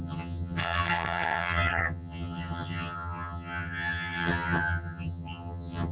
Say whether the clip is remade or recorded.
remade